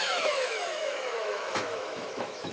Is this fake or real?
fake